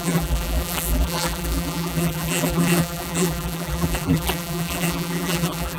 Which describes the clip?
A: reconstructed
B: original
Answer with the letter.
A